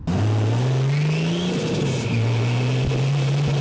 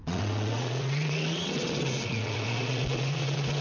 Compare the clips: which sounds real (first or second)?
first